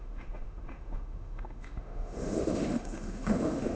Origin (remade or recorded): remade